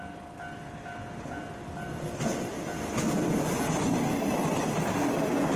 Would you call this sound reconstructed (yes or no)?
no